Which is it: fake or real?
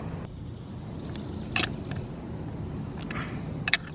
real